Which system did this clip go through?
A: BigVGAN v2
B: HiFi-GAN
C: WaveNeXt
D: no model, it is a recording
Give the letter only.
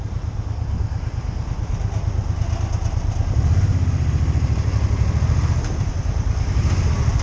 D